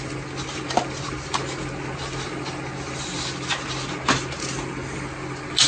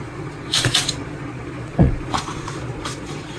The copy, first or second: second